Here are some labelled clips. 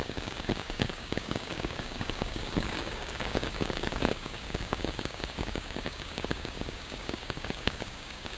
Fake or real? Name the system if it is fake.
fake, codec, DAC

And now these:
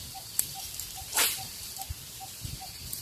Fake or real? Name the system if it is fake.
fake, vocoder, BigVGAN v2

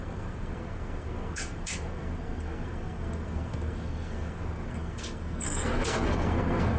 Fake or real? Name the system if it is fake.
fake, codec, SNAC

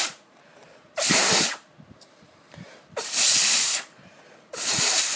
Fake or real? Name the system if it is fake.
fake, vocoder, BigVGAN v2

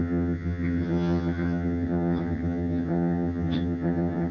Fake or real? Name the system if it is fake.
fake, vocoder, HiFi-GAN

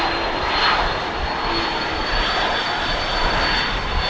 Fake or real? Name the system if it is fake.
real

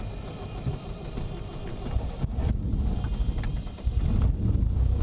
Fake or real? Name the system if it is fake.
real